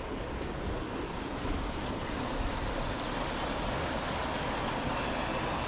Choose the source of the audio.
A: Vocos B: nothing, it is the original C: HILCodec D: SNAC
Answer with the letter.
B